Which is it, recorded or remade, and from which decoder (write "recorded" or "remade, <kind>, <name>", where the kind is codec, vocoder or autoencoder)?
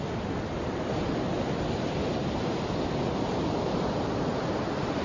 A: recorded